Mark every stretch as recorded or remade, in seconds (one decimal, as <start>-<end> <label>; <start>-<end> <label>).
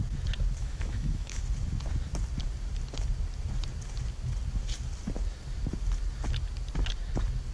0.0-0.6 recorded; 0.6-1.4 remade; 1.4-7.5 recorded